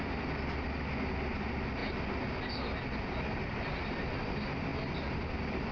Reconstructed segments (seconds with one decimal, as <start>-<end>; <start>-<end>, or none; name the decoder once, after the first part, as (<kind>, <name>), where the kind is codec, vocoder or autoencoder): none